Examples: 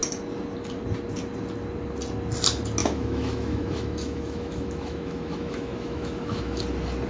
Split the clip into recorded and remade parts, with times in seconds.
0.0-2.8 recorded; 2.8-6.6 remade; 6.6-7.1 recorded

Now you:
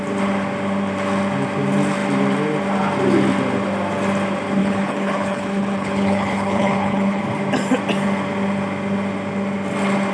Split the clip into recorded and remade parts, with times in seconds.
0.0-4.6 recorded; 4.6-7.2 remade; 7.2-10.1 recorded

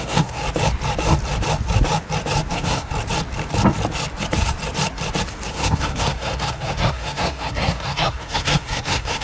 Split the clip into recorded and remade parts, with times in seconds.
0.0-0.4 remade; 0.4-2.5 recorded; 2.5-2.9 remade; 2.9-5.5 recorded; 5.5-9.2 remade

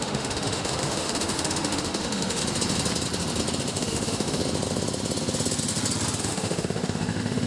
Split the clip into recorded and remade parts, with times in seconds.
0.0-2.4 remade; 2.4-3.7 recorded; 3.7-4.4 remade; 4.4-6.2 recorded; 6.2-7.5 remade

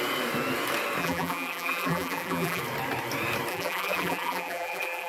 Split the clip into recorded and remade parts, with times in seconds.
0.0-1.0 recorded; 1.0-2.6 remade; 2.6-3.5 recorded; 3.5-5.1 remade